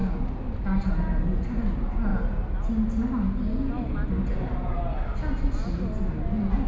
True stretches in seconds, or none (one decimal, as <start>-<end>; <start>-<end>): 0.0-6.7